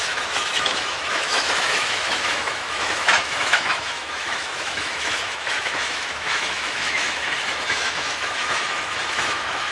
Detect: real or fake fake